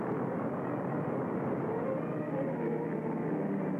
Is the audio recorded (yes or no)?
yes